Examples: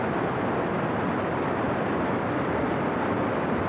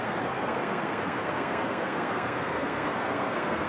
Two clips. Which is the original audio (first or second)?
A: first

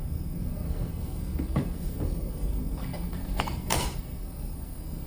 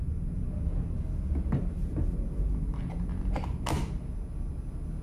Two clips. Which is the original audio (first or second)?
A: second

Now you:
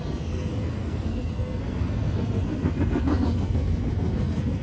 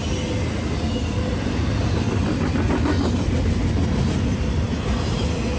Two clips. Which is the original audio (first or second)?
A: second